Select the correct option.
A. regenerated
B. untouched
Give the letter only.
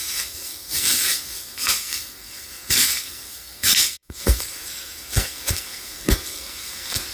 A